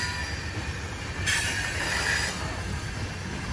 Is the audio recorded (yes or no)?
yes